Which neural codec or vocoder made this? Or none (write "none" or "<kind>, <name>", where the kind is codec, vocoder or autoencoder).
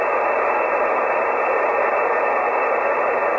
none